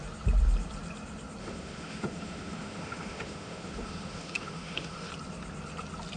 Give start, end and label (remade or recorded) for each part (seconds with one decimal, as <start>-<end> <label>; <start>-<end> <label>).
0.0-1.4 recorded; 1.4-5.1 remade; 5.1-6.2 recorded